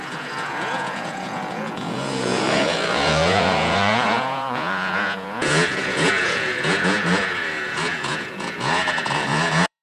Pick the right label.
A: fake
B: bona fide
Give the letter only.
A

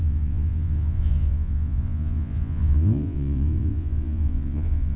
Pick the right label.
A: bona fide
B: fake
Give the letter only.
B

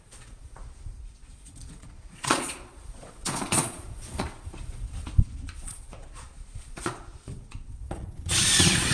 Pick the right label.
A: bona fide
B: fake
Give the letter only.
B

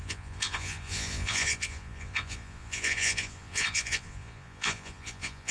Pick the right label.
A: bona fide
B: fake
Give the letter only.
B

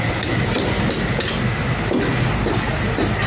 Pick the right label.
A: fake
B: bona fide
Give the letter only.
B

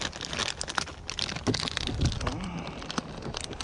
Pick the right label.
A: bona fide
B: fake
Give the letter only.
A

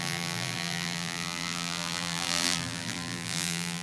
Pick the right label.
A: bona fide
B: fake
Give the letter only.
B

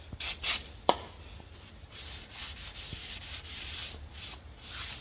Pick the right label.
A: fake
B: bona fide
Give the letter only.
B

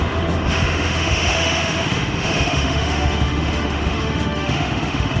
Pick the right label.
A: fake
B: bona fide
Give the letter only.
A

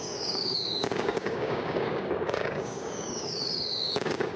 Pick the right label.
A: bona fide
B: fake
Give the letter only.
B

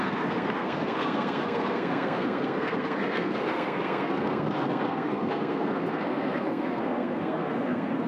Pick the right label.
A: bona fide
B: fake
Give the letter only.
B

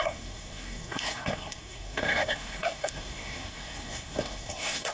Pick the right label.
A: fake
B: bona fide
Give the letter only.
A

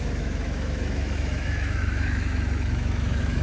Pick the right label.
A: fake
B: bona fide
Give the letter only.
A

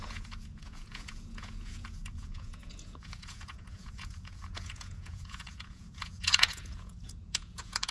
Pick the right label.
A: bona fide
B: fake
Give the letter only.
B